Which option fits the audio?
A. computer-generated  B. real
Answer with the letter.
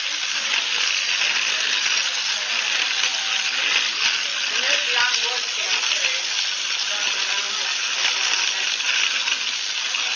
B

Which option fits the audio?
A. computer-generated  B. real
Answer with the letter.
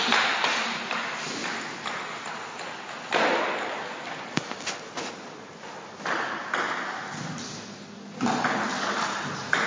B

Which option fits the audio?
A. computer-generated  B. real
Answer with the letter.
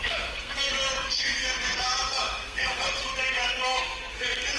A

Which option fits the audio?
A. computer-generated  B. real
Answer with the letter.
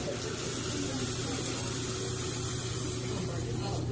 B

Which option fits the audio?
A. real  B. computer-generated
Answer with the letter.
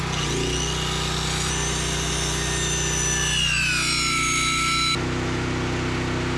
A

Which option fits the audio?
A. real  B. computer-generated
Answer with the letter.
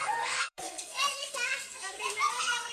B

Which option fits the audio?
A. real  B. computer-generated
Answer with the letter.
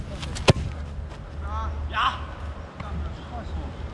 A